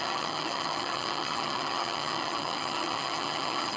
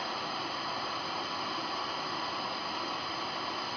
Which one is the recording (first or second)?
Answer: second